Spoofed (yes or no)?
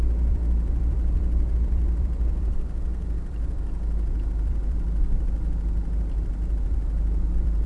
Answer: yes